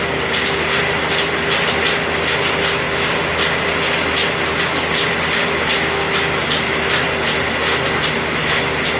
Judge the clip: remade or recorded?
recorded